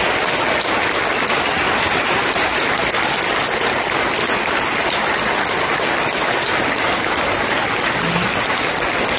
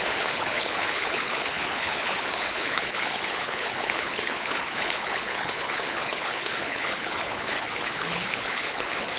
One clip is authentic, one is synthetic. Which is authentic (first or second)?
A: first